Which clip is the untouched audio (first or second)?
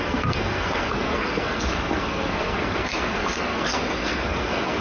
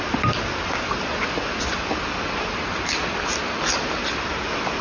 second